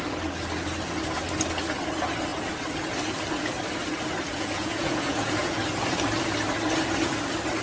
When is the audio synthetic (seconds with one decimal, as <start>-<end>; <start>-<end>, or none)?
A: 4.3-5.6